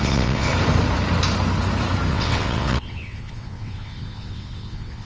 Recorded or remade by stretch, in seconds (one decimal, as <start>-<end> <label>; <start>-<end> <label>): 0.0-0.5 remade; 0.5-2.1 recorded; 2.1-5.0 remade